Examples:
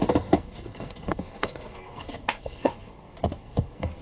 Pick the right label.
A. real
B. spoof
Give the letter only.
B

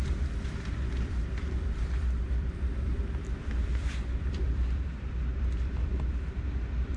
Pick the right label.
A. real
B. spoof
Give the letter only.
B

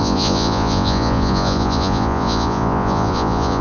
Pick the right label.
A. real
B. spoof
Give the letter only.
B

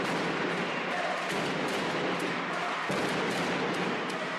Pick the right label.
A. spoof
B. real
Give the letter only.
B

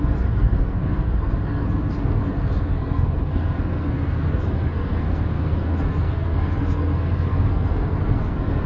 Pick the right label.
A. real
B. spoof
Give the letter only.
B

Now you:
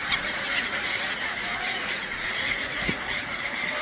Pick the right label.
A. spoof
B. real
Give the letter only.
A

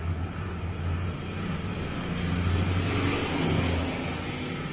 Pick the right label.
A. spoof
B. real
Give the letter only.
B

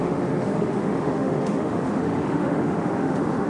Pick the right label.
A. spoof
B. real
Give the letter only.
A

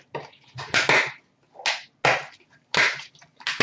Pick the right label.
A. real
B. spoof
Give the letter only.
A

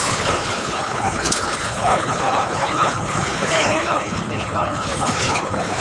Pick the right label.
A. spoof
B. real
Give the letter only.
A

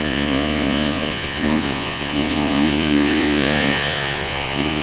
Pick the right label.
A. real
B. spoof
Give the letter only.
B